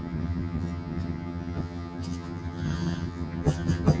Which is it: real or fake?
fake